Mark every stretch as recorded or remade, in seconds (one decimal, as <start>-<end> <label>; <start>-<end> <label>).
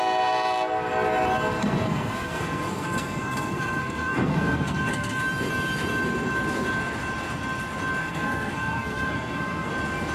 0.0-1.6 recorded; 1.6-5.2 remade; 5.2-8.0 recorded; 8.0-9.7 remade; 9.7-10.1 recorded